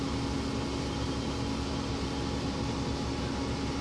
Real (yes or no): yes